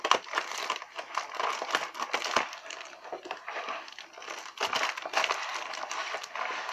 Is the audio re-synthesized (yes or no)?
no